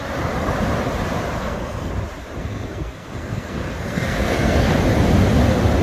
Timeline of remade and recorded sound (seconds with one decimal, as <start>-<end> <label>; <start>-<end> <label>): 0.0-1.4 recorded; 1.4-1.9 remade; 1.9-2.4 recorded; 2.4-4.7 remade; 4.7-5.8 recorded